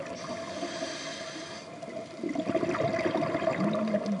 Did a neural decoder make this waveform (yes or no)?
no